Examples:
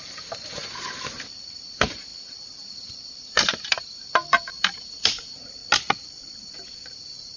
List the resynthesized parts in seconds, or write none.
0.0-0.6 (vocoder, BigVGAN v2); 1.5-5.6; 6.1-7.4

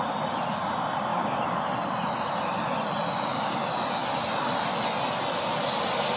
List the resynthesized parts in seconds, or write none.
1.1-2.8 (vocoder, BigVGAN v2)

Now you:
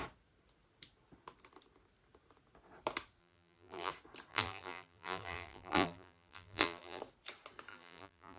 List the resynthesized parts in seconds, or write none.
3.2-3.9 (vocoder, BigVGAN v2); 4.3-7.0; 7.7-8.4